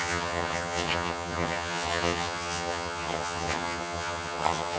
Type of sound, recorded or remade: remade